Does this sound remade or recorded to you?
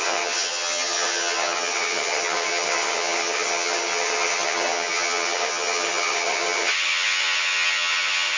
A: remade